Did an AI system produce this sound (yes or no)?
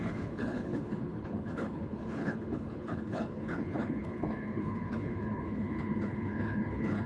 yes